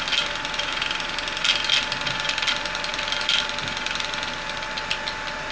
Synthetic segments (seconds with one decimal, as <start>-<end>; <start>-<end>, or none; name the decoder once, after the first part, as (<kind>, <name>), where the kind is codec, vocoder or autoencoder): none